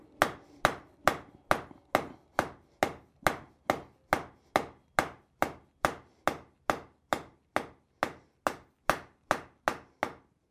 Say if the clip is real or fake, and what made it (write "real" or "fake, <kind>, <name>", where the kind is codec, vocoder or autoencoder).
real